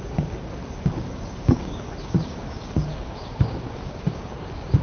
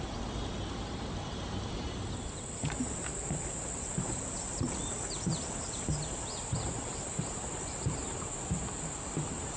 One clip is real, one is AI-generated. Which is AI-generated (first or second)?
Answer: first